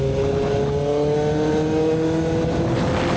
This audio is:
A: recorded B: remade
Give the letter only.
A